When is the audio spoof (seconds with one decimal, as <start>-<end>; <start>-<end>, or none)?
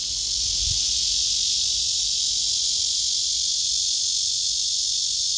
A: none